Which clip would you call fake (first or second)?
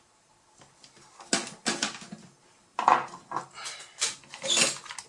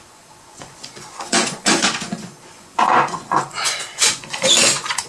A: second